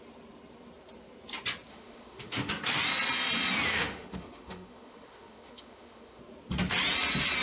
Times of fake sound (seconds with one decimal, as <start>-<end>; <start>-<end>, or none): 1.7-2.5; 3.7-6.2